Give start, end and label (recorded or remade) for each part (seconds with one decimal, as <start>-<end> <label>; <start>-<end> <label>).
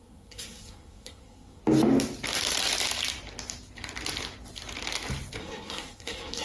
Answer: 0.0-1.6 remade; 1.6-5.4 recorded; 5.4-6.4 remade